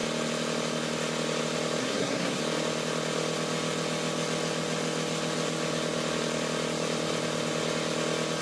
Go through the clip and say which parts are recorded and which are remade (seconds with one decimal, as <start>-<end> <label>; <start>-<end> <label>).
0.0-1.8 recorded; 1.8-2.4 remade; 2.4-8.4 recorded